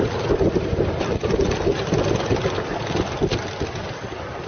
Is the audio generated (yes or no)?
no